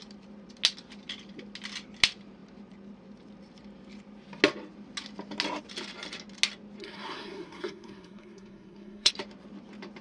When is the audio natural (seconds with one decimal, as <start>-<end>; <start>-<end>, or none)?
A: 0.0-6.8; 9.1-10.0